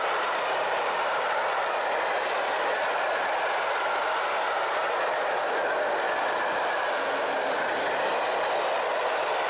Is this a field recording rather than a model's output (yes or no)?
yes